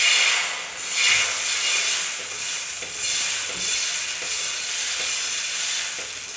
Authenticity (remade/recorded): recorded